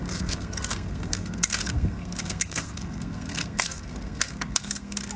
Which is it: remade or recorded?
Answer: remade